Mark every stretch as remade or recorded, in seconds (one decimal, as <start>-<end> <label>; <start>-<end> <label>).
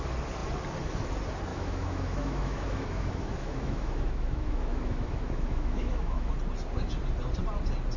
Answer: 0.0-1.5 recorded; 1.5-6.3 remade; 6.3-8.0 recorded